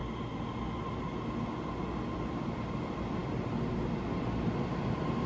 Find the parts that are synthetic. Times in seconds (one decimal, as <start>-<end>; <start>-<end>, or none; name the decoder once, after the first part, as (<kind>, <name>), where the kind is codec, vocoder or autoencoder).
none